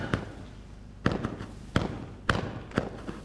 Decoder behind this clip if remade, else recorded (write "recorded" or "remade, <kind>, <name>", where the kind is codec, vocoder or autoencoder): recorded